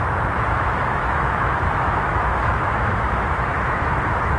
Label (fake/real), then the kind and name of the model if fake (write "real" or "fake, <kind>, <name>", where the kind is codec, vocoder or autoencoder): fake, autoencoder, DAC-VAE